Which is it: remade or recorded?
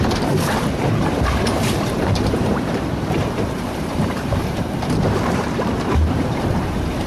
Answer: remade